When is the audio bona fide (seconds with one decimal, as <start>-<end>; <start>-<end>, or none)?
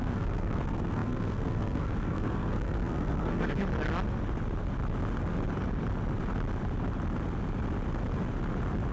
3.6-8.9